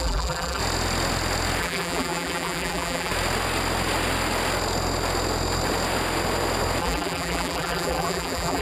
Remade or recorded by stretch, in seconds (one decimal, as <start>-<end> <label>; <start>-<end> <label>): 0.0-0.6 remade; 0.6-1.6 recorded; 1.6-3.1 remade; 3.1-6.8 recorded; 6.8-8.6 remade